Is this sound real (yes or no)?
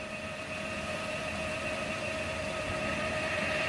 yes